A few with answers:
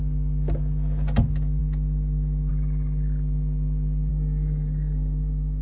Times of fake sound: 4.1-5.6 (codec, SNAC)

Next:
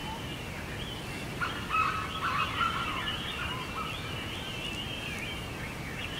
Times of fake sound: none